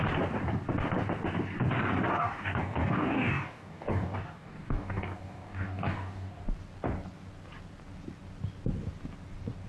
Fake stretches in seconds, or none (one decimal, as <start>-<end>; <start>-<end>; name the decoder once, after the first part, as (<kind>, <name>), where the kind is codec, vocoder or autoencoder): 2.1-6.4 (codec, DAC)